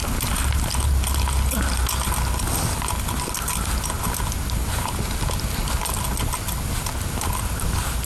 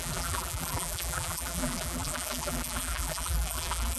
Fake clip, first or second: second